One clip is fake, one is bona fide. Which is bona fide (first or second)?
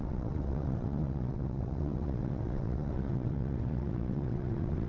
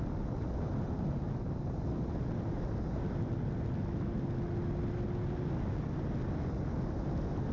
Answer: second